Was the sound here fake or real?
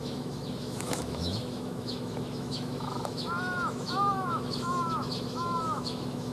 fake